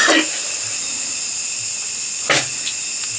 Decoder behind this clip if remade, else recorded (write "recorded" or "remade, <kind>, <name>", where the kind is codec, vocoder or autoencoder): recorded